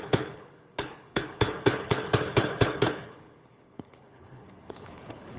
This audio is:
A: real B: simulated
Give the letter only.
B